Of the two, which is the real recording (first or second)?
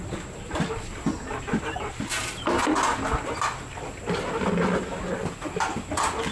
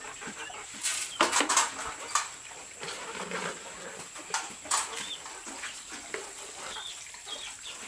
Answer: first